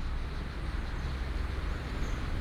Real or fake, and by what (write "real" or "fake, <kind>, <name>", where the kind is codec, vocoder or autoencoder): real